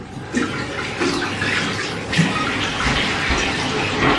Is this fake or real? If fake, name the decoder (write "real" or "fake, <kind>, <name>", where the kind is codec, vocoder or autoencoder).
real